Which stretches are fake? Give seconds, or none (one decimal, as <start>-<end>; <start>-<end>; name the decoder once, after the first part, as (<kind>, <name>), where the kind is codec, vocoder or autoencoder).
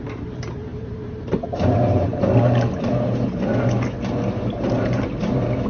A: 0.0-3.5 (vocoder, BigVGAN v2); 4.5-5.7